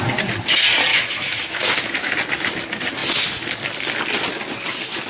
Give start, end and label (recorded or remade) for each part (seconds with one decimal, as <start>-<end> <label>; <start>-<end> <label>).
0.0-0.9 recorded; 0.9-2.1 remade; 2.1-5.1 recorded